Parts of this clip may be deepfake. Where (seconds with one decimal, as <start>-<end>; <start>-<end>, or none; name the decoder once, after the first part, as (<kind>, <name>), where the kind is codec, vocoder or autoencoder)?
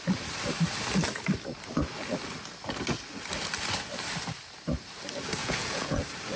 5.4-6.0 (vocoder, Vocos)